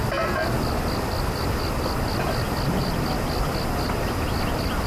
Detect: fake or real real